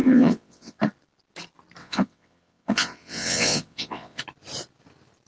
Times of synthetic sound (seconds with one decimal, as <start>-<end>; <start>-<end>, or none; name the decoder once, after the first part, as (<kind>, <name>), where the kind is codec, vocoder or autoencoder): 0.0-0.8 (vocoder, WaveNeXt); 1.8-4.2